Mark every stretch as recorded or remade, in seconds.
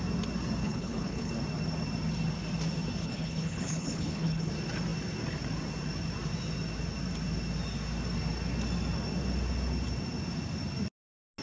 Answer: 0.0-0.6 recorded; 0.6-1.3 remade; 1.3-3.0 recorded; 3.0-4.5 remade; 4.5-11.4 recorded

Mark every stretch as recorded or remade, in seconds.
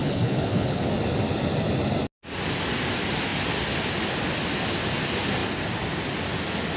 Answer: 0.0-0.9 remade; 0.9-6.8 recorded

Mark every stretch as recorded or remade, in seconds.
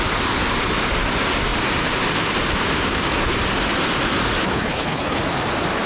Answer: 0.0-4.4 recorded; 4.4-5.2 remade; 5.2-5.9 recorded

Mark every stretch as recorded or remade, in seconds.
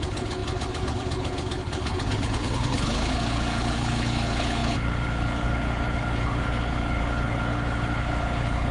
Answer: 0.0-8.7 remade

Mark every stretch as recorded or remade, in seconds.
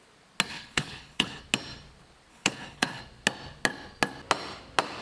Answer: 0.0-0.5 recorded; 0.5-1.4 remade; 1.4-2.3 recorded; 2.3-3.0 remade; 3.0-5.0 recorded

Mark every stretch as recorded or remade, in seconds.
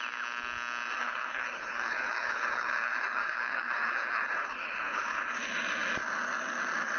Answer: 0.0-1.0 recorded; 1.0-5.2 remade; 5.2-7.0 recorded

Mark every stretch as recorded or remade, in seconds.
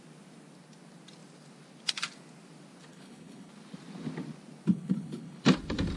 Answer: 0.0-2.9 recorded; 2.9-3.5 remade; 3.5-4.7 recorded; 4.7-5.4 remade; 5.4-6.0 recorded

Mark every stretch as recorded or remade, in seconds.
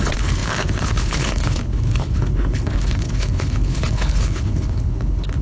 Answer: 0.0-5.4 remade